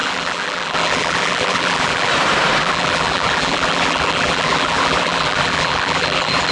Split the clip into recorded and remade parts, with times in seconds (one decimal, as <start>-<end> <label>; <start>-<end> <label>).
0.0-2.1 remade; 2.1-2.6 recorded; 2.6-6.5 remade